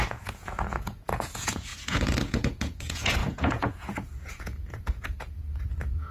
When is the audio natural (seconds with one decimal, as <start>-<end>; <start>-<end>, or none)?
none